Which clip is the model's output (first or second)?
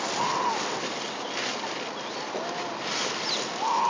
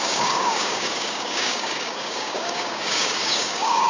second